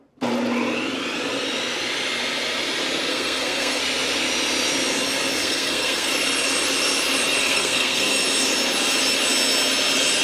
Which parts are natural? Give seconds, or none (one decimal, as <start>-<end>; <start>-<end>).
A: 0.0-3.1; 3.8-5.4; 6.1-7.4; 8.1-10.2